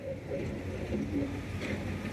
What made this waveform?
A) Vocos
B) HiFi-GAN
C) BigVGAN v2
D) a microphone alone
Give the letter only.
C